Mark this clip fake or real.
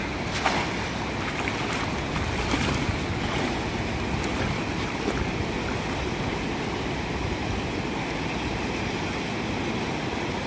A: real